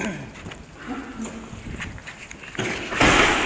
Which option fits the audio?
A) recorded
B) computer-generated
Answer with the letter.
A